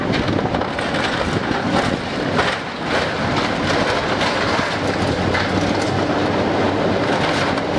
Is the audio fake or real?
real